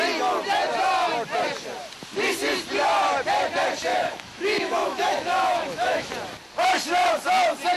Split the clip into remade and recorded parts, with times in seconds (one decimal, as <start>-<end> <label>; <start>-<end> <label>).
0.0-3.9 recorded; 3.9-6.1 remade; 6.1-7.8 recorded